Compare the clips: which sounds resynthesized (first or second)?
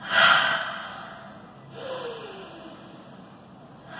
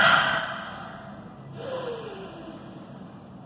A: second